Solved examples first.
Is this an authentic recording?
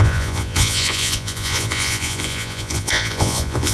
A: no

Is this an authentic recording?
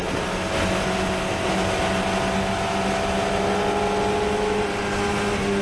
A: yes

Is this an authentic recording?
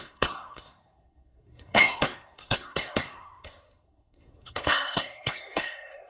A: no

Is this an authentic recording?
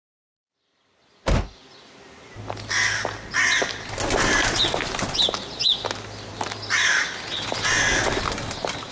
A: yes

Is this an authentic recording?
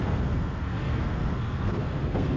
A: no